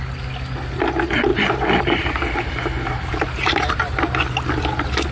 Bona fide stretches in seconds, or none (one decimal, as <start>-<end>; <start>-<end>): 0.0-1.3; 3.9-5.1